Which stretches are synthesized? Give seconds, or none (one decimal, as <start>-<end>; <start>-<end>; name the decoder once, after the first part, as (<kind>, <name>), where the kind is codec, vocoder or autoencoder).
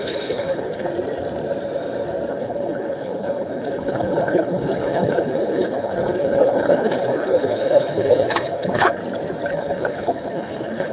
0.0-0.9 (codec, HILCodec); 2.3-9.0; 9.5-10.9